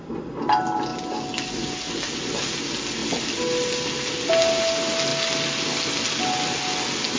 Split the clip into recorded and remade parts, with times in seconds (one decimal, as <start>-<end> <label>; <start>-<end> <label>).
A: 0.0-7.2 recorded